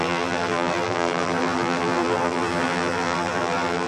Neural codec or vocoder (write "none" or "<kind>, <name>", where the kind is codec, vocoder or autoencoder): vocoder, BigVGAN v2